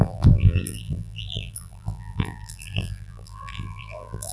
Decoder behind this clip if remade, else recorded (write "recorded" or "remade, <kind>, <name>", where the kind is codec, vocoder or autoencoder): remade, vocoder, BigVGAN v2